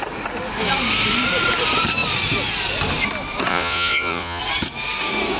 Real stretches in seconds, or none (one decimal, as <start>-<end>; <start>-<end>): 0.0-3.5; 4.4-5.4